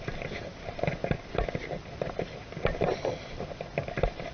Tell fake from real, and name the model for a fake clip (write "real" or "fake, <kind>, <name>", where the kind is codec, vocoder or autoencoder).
real